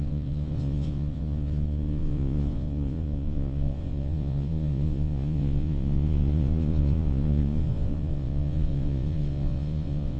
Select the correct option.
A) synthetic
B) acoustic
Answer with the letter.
A